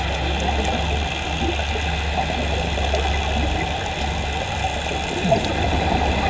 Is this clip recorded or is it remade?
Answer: recorded